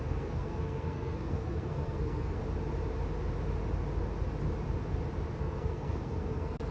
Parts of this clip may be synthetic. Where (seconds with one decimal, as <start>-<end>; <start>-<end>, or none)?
0.0-2.4; 5.4-6.7